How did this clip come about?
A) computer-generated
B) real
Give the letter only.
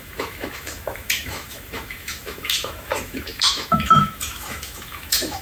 A